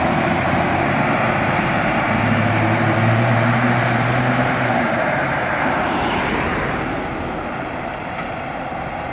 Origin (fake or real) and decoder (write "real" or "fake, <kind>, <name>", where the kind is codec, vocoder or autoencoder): fake, vocoder, BigVGAN v2